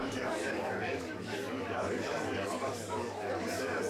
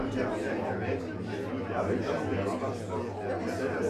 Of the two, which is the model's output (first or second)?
first